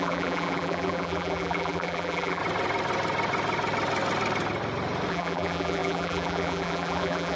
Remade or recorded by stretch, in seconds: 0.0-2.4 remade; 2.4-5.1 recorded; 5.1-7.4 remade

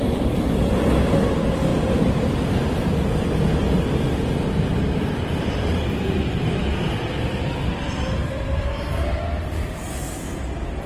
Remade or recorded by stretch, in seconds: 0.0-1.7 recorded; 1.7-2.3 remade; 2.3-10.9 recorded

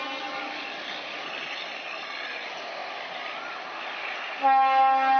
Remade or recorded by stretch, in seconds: 0.0-5.2 recorded